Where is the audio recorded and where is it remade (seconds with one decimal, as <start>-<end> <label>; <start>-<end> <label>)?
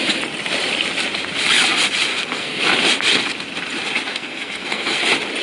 0.0-2.1 recorded; 2.1-2.6 remade; 2.6-4.1 recorded; 4.1-5.0 remade; 5.0-5.4 recorded